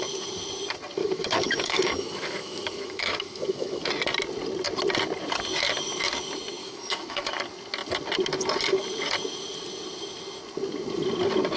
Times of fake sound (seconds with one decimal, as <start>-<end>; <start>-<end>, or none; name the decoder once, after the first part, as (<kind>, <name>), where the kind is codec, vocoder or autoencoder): 1.0-3.9 (autoencoder, DAC-VAE); 6.6-7.3